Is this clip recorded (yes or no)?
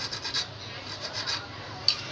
yes